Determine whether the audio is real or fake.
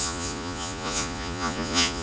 fake